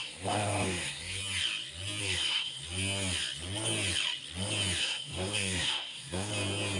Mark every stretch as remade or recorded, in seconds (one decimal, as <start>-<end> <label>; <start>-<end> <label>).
0.0-1.2 remade; 1.2-2.0 recorded; 2.0-2.6 remade; 2.6-4.8 recorded; 4.8-6.3 remade; 6.3-6.8 recorded